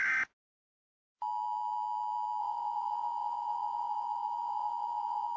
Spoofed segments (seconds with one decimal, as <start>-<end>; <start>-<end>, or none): 2.4-5.4